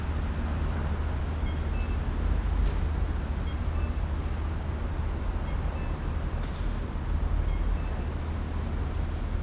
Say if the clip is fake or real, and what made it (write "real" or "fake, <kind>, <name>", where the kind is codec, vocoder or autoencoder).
real